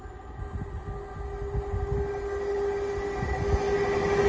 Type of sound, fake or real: real